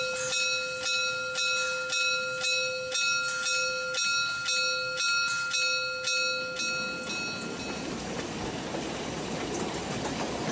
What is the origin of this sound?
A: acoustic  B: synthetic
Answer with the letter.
A